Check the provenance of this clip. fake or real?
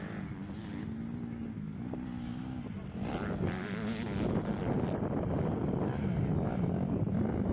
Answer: real